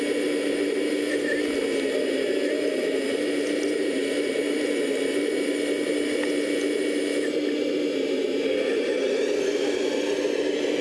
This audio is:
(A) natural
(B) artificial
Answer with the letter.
B